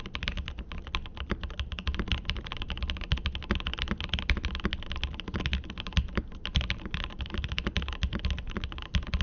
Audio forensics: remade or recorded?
recorded